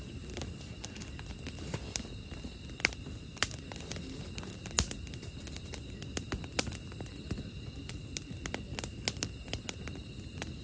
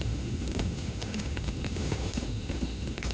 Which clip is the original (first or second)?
first